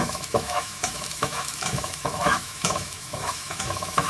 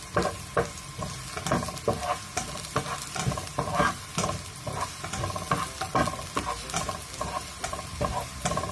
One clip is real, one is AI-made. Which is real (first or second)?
second